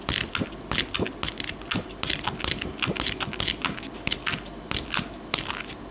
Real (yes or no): yes